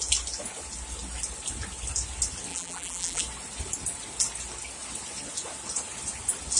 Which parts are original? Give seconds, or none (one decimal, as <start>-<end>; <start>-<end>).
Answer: 0.0-2.5; 3.2-6.6